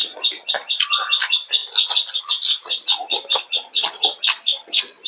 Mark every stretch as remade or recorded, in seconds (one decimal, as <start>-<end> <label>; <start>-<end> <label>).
0.0-1.6 remade; 1.6-2.2 recorded; 2.2-5.1 remade